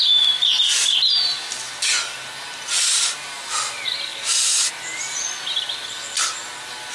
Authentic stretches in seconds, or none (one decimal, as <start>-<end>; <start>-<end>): 0.0-6.9